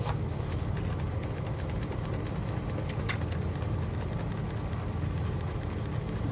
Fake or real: real